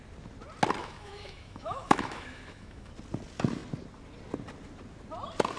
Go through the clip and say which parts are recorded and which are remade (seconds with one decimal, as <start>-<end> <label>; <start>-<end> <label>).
0.0-0.8 recorded; 0.8-2.9 remade; 2.9-5.6 recorded